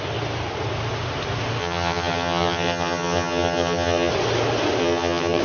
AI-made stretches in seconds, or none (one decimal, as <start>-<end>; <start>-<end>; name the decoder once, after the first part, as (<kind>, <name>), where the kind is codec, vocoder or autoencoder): 1.6-4.1 (vocoder, HiFi-GAN); 4.8-5.4